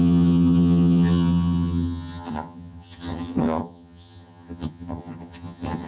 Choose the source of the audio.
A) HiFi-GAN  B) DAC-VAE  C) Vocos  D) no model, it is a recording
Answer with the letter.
A